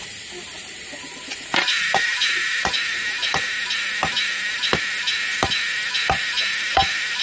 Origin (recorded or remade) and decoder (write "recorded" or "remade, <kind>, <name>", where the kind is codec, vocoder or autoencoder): recorded